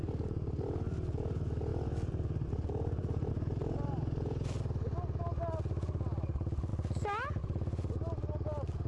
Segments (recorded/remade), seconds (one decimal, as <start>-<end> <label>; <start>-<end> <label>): 0.0-1.7 recorded; 1.7-3.3 remade; 3.3-8.9 recorded